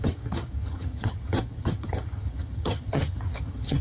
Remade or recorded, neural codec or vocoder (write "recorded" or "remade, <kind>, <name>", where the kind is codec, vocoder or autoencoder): remade, vocoder, HiFi-GAN